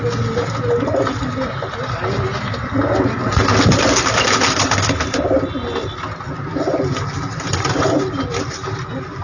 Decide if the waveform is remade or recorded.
recorded